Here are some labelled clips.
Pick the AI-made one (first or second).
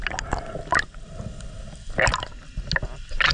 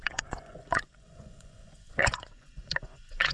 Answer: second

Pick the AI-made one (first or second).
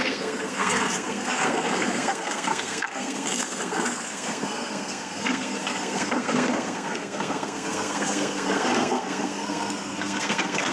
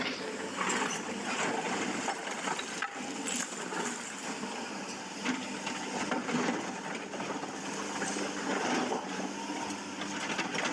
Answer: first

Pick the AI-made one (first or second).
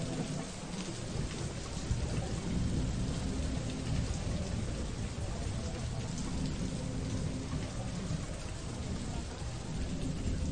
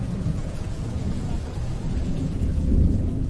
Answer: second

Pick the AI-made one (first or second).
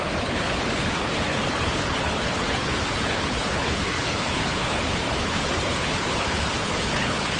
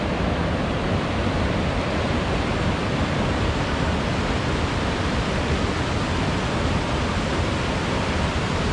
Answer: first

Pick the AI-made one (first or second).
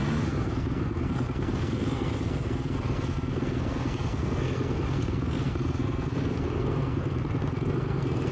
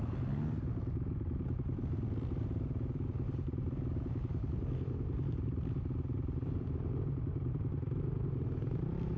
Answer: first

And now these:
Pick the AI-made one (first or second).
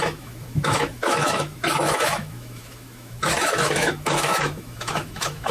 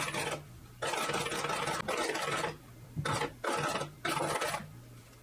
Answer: first